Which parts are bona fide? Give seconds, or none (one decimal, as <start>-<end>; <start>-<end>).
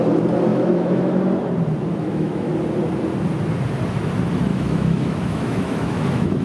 0.0-0.5; 1.1-1.9; 2.5-4.5